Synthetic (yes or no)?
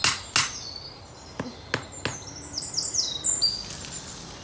no